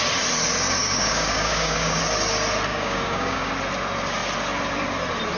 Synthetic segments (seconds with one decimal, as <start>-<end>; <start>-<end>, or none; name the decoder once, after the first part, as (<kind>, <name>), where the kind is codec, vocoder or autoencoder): 0.8-2.0 (codec, DAC); 2.7-3.5